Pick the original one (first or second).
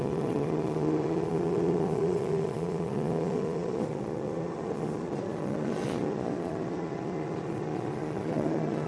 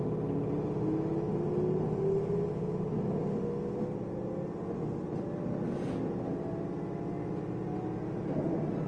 second